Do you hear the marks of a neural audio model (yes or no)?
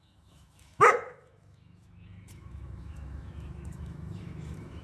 yes